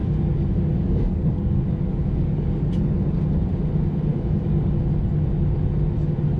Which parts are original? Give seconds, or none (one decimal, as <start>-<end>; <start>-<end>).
2.7-4.1; 4.7-6.4